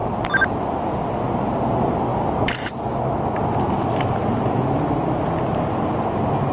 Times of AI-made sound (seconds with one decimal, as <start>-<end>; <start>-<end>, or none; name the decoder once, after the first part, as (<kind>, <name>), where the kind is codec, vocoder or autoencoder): none